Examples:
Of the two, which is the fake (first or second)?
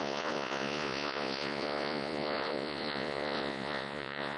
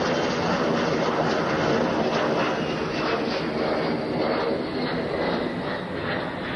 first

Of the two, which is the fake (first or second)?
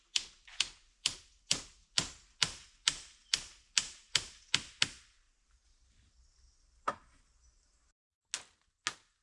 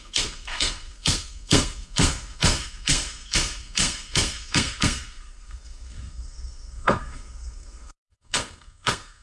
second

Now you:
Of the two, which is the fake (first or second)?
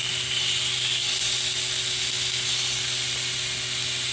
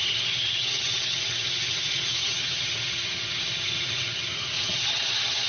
second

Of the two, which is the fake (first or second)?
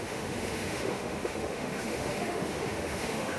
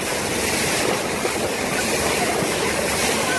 first